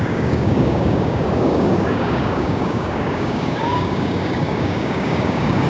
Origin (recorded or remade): remade